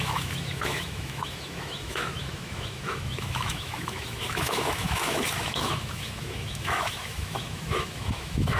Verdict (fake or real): fake